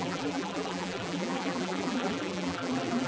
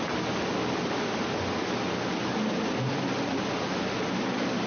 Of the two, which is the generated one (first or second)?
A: first